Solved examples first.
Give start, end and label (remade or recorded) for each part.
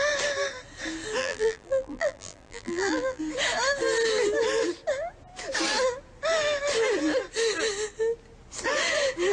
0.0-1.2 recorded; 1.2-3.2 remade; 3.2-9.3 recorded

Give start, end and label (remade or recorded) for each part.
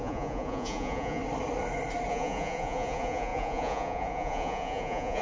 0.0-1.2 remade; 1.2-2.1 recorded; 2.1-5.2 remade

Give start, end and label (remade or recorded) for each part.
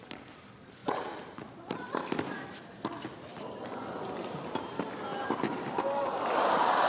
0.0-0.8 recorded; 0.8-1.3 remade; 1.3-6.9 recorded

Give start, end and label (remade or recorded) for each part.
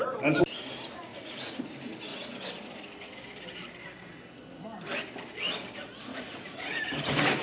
0.0-1.1 recorded; 1.1-1.6 remade; 1.6-6.1 recorded; 6.1-6.8 remade; 6.8-7.4 recorded